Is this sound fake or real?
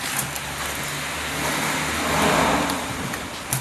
real